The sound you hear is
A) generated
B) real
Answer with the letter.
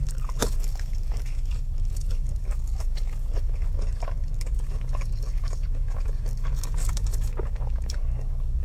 A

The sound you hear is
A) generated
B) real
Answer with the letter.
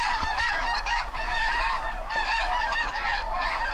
A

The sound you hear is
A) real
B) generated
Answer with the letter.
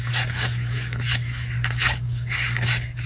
B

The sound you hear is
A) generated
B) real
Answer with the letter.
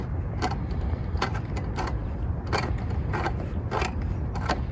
B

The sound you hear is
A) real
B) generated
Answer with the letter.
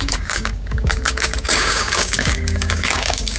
B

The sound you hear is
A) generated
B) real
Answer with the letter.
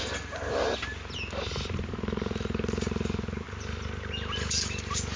B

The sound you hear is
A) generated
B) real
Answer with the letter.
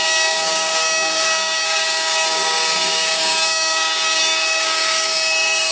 A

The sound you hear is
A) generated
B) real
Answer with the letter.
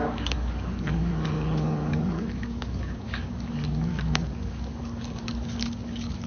A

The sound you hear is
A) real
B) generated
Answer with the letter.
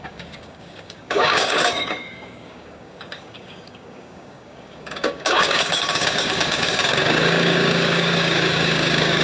B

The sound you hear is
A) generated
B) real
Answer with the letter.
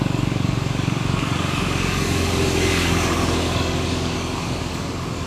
A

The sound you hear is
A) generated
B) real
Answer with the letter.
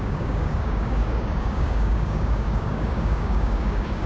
A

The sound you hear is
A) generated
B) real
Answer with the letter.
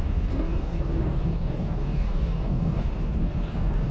A